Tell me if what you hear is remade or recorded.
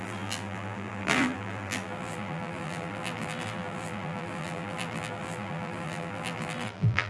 remade